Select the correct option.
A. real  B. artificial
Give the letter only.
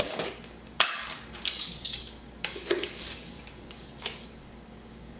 B